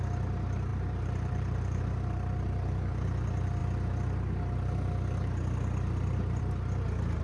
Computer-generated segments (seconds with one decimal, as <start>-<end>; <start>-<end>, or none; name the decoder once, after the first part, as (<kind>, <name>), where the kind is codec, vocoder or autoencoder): 0.7-1.8 (vocoder, BigVGAN v2)